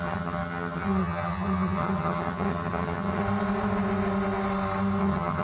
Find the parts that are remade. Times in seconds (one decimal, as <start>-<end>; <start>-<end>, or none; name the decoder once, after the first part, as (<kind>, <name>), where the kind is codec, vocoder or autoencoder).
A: 0.0-3.2 (vocoder, HiFi-GAN); 5.0-5.4